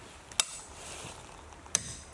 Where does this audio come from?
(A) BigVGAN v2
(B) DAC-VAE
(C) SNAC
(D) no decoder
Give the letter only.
D